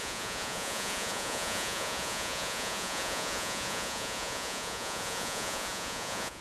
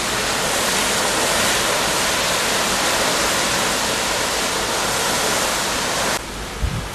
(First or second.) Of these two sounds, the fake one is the first